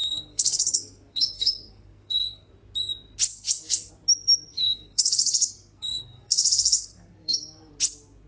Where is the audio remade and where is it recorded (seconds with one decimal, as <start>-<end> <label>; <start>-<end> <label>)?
0.0-2.5 remade; 2.5-3.3 recorded; 3.3-3.9 remade; 3.9-4.5 recorded; 4.5-7.7 remade; 7.7-8.3 recorded